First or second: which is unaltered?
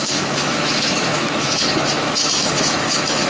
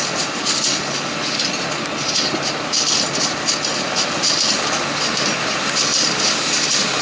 second